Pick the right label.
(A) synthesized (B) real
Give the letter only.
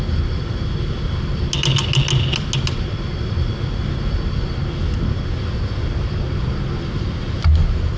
B